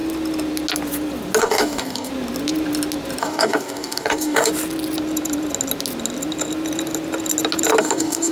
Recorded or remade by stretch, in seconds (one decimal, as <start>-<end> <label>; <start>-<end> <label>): 0.0-1.4 recorded; 1.4-2.1 remade; 2.1-3.2 recorded; 3.2-4.5 remade; 4.5-7.8 recorded; 7.8-8.3 remade